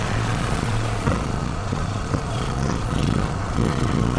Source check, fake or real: fake